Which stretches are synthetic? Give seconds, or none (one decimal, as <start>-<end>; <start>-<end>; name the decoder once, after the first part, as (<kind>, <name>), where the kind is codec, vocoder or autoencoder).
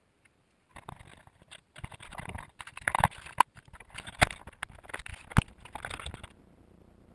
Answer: 1.1-4.2 (vocoder, BigVGAN v2)